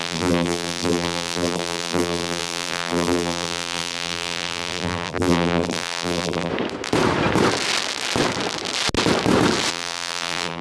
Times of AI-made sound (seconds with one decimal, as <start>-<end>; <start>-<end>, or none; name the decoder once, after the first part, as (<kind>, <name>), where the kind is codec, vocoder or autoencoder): 0.0-6.5 (vocoder, BigVGAN v2); 9.7-10.6